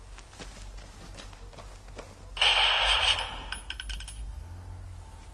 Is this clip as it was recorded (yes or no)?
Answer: yes